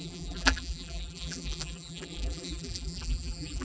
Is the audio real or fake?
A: fake